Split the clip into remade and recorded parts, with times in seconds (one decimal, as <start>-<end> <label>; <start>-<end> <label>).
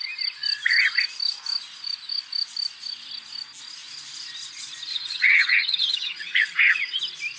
0.0-4.9 recorded; 4.9-7.0 remade; 7.0-7.4 recorded